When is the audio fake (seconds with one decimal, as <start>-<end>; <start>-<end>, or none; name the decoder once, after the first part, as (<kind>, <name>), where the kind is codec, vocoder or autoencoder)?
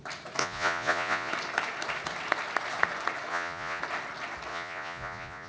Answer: 0.4-1.3 (vocoder, Vocos); 3.3-3.8; 4.5-5.5